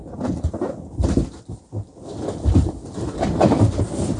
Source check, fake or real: real